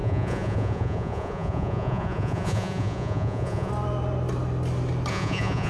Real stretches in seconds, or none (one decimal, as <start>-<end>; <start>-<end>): 3.7-5.1